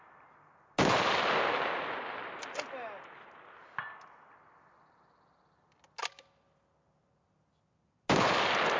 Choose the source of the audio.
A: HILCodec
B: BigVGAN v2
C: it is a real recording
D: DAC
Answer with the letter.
C